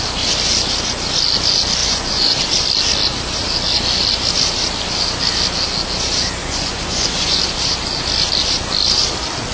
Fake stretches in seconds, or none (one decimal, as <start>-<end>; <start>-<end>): 1.8-2.4; 6.4-7.4